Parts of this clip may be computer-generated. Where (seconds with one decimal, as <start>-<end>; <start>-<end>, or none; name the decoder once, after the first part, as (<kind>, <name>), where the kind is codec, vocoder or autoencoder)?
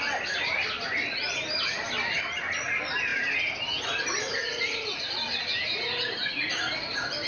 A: none